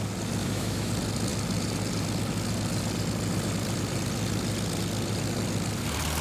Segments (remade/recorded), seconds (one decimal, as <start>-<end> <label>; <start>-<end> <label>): 0.0-0.4 recorded; 0.4-0.9 remade; 0.9-6.2 recorded